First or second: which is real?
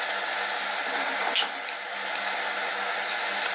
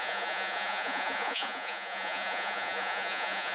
first